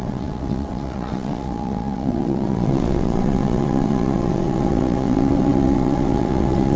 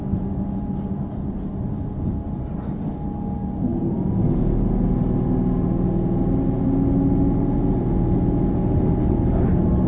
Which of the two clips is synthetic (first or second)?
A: first